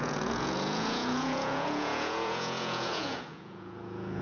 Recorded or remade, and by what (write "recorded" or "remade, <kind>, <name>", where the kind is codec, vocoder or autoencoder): remade, vocoder, Vocos